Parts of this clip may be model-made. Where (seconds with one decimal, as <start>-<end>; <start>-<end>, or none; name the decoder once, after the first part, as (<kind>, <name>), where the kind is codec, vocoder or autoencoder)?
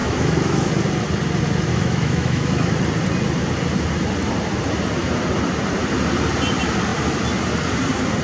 0.0-0.7 (autoencoder, DAC-VAE); 1.7-2.8